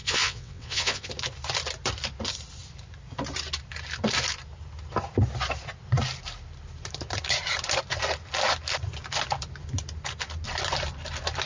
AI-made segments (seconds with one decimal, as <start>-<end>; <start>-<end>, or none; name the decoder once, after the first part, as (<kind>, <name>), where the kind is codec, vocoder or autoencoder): 0.0-1.1 (vocoder, WaveNeXt)